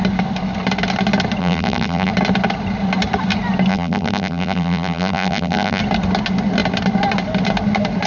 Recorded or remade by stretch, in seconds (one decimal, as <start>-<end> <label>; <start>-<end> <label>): 0.0-1.4 recorded; 1.4-2.1 remade; 2.1-3.7 recorded; 3.7-5.8 remade; 5.8-8.1 recorded

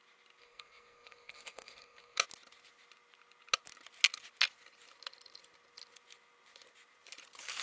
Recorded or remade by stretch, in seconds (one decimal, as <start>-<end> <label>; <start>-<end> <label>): 0.0-0.4 recorded; 0.4-2.2 remade; 2.2-7.6 recorded

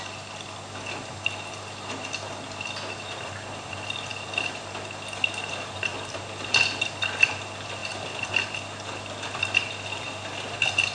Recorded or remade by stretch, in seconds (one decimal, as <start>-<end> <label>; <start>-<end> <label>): 0.0-7.8 recorded; 7.8-8.3 remade; 8.3-10.9 recorded

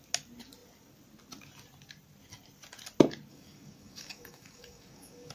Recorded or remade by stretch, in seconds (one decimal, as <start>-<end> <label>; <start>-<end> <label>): 0.0-3.3 recorded; 3.3-5.3 remade

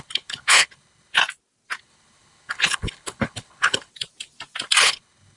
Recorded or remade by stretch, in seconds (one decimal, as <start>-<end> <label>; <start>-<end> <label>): 0.0-1.2 remade; 1.2-1.8 recorded; 1.8-3.9 remade; 3.9-4.8 recorded; 4.8-5.4 remade